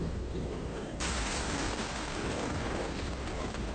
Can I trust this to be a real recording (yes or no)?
no